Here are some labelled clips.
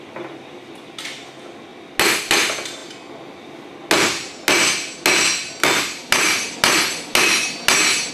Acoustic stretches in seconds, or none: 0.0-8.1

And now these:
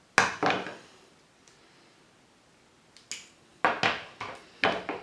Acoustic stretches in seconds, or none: 0.0-5.0

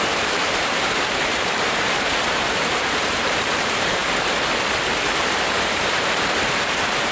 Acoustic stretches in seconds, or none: 4.0-5.1

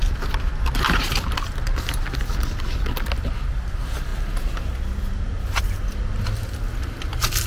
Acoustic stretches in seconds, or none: 0.0-7.5

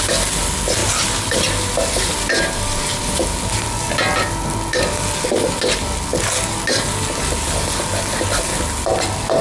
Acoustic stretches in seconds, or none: 0.0-9.4

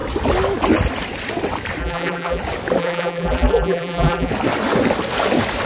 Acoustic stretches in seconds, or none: 0.0-1.8; 2.4-2.8; 4.3-5.7

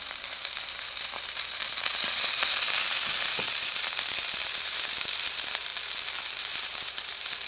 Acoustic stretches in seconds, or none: 5.7-6.4

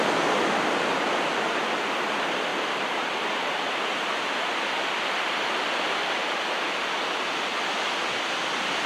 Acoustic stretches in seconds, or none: 0.0-2.5; 4.4-8.9